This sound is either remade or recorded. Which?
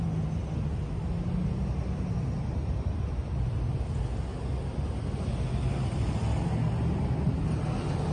recorded